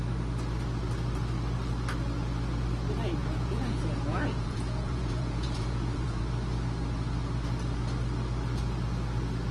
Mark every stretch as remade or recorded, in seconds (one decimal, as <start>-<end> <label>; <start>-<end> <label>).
0.0-3.2 recorded; 3.2-6.2 remade; 6.2-9.5 recorded